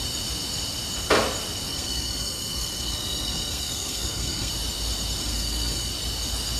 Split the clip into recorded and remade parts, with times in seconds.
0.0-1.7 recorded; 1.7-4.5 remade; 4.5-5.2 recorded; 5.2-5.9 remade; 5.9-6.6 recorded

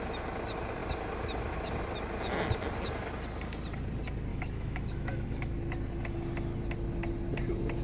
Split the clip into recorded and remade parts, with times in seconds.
0.0-4.3 recorded; 4.3-5.5 remade; 5.5-7.8 recorded